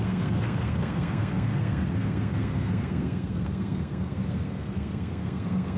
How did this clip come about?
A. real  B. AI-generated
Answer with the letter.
B